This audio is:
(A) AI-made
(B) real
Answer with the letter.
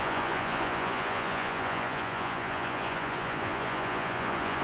A